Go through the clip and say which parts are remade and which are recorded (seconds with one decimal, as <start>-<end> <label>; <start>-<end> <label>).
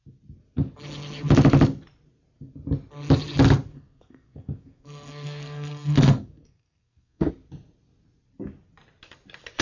0.0-3.7 recorded; 3.7-7.3 remade; 7.3-9.6 recorded